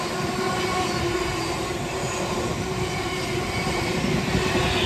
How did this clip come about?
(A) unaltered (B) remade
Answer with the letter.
A